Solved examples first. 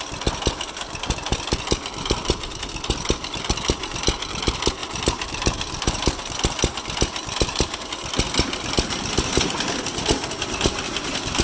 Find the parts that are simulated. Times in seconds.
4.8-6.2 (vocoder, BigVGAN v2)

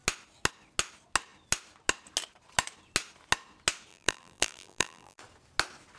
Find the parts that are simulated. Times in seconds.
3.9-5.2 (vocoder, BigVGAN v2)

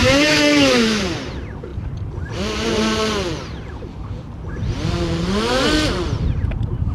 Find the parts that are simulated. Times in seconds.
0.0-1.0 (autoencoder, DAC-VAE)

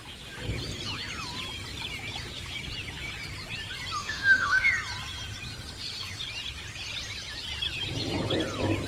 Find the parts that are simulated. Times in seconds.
4.0-4.7 (autoencoder, DAC-VAE)

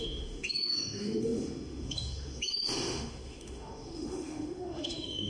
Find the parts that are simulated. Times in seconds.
0.0-5.3 (autoencoder, DAC-VAE)

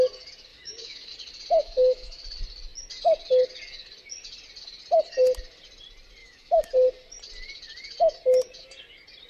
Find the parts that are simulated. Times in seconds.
0.5-1.1 (autoencoder, DAC-VAE); 1.6-2.2; 6.2-6.7